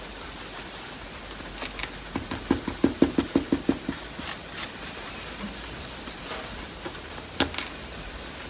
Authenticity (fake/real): real